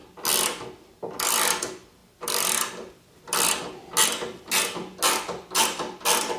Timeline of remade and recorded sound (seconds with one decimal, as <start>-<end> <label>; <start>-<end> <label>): 0.0-2.0 recorded; 2.0-3.2 remade; 3.2-6.4 recorded